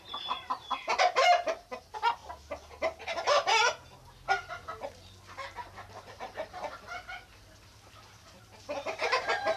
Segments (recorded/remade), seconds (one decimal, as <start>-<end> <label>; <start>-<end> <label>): 0.0-2.2 remade; 2.2-4.5 recorded; 4.5-9.6 remade